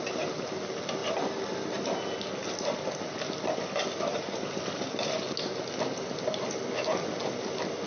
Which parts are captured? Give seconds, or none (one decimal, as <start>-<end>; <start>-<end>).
0.0-7.9